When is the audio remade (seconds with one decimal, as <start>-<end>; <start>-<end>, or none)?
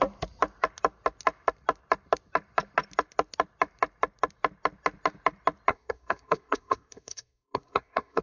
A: 5.7-8.2